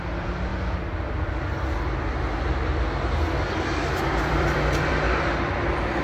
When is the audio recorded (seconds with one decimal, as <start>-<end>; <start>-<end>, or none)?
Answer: 0.5-4.1